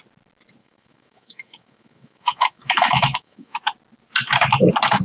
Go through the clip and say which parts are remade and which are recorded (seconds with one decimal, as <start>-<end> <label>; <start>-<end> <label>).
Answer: 0.0-0.6 recorded; 0.6-3.6 remade; 3.6-5.0 recorded